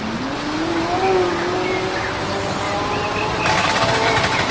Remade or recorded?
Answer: recorded